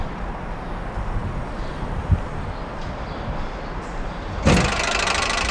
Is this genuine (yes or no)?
yes